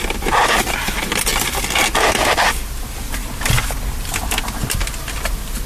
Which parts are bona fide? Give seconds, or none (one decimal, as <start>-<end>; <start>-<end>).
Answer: 0.0-5.7